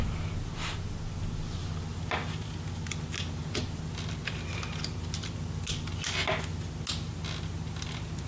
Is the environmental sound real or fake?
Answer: real